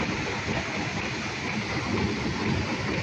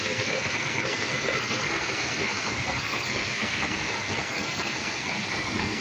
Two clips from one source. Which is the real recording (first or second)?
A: first